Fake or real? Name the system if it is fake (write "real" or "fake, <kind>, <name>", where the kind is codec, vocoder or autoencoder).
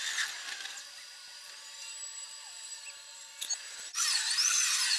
fake, vocoder, BigVGAN v2